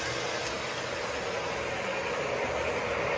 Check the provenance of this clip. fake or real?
real